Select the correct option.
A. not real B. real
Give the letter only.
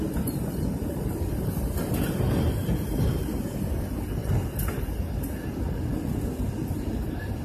B